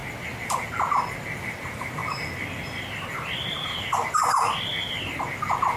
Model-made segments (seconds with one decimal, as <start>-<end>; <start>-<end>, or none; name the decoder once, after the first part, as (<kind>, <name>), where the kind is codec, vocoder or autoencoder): none